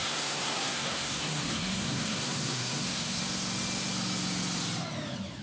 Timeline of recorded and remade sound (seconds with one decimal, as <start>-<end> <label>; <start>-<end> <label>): 0.0-3.2 remade; 3.2-5.4 recorded